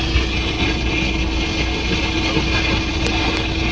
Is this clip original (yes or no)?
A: yes